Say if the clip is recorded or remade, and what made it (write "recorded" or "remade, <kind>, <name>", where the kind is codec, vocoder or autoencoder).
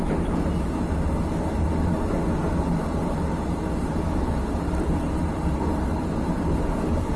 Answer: recorded